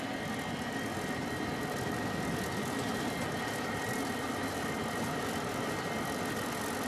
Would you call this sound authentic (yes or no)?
yes